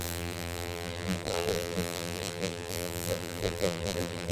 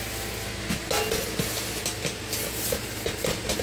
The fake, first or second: first